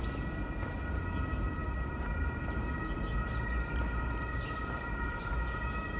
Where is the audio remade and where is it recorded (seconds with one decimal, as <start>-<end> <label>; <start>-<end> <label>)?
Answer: 0.0-6.0 recorded